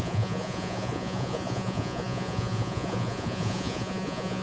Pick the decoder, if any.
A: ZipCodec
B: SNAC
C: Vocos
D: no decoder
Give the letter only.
C